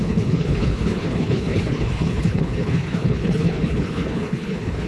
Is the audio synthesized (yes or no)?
yes